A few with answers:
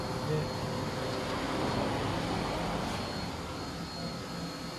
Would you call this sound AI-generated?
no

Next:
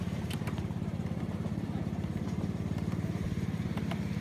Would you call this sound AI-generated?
yes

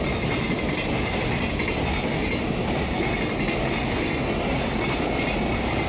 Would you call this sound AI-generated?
no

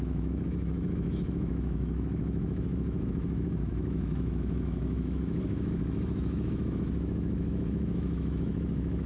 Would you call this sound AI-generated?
yes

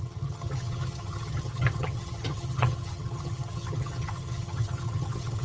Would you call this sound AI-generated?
yes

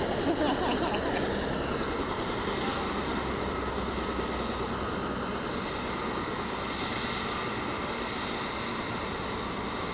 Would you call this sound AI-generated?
no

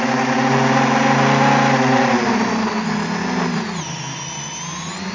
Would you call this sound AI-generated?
no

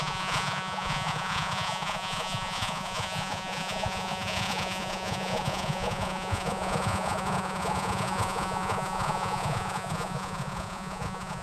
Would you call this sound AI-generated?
yes